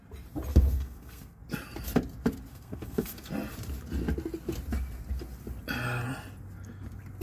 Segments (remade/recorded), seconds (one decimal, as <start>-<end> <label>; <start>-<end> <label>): 0.0-0.5 recorded; 0.5-1.4 remade; 1.4-2.5 recorded; 2.5-3.3 remade; 3.3-7.2 recorded